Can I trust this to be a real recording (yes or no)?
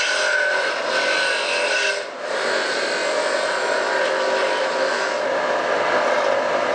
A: yes